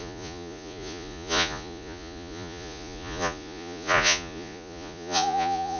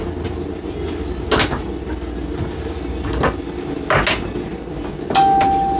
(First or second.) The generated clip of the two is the first